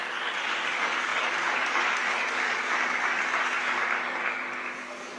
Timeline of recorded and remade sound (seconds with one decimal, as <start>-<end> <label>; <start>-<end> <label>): 0.0-5.2 remade